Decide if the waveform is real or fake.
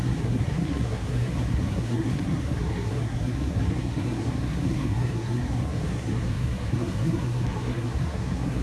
fake